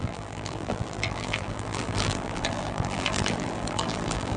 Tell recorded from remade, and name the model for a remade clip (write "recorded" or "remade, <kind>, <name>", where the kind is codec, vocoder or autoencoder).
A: remade, vocoder, BigVGAN v2